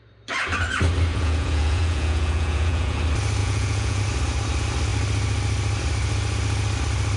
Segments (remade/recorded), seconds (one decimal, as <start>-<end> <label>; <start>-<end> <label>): 0.0-1.1 recorded; 1.1-3.0 remade; 3.0-3.4 recorded; 3.4-4.0 remade; 4.0-7.2 recorded